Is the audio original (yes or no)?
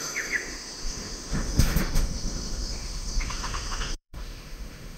no